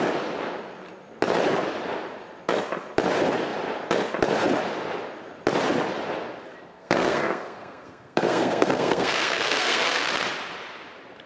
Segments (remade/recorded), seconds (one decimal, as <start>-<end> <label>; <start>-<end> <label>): 0.0-6.7 recorded; 6.7-10.0 remade; 10.0-11.3 recorded